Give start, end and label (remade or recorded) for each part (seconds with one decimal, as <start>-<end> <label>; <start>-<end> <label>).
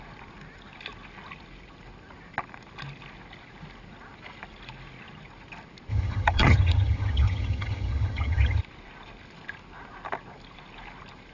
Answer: 0.0-5.9 recorded; 5.9-8.6 remade; 8.6-11.3 recorded